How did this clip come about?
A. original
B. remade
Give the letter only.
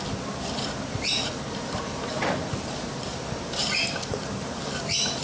B